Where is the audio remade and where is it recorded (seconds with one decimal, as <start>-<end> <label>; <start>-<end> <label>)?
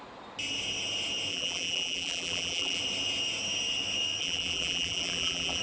0.0-1.3 recorded; 1.3-2.8 remade; 2.8-4.2 recorded; 4.2-5.6 remade